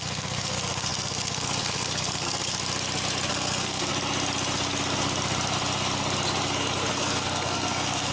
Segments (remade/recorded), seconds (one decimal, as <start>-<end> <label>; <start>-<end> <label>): 0.0-2.6 remade; 2.6-3.3 recorded; 3.3-3.9 remade; 3.9-6.9 recorded; 6.9-8.1 remade

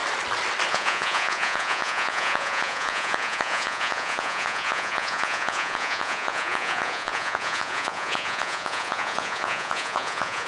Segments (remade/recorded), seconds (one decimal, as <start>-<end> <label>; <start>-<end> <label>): 0.0-0.7 recorded; 0.7-10.5 remade